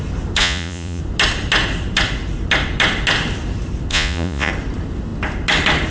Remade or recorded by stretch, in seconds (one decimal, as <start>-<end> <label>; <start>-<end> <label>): 0.0-0.4 recorded; 0.4-1.0 remade; 1.0-3.9 recorded; 3.9-4.5 remade; 4.5-5.9 recorded